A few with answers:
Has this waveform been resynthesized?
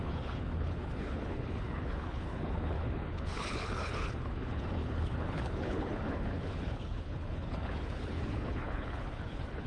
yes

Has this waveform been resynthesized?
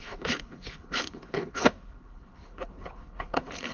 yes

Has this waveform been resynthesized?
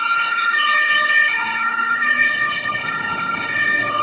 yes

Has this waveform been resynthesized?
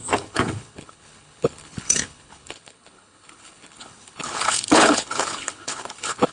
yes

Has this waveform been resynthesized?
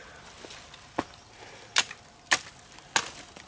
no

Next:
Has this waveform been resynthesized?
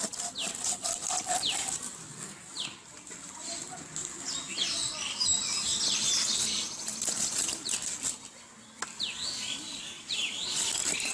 no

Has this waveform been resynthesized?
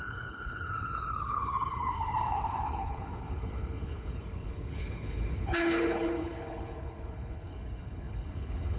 yes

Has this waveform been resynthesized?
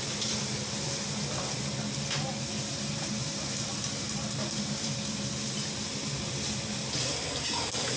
no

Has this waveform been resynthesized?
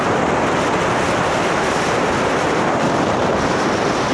no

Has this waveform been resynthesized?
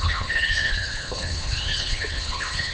yes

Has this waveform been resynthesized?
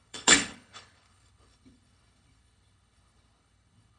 yes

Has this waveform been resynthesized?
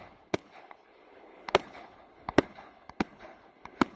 yes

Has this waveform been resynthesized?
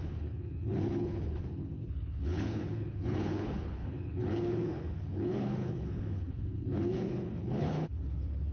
yes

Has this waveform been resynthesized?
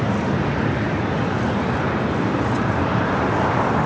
no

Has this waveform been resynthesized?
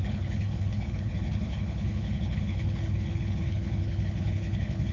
yes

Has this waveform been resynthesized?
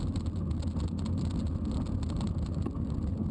no